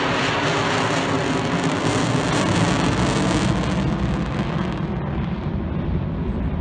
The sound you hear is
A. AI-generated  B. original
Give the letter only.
B